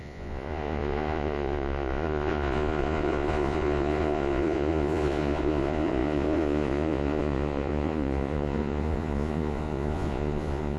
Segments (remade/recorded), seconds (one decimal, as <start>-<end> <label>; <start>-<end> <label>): 0.0-10.8 remade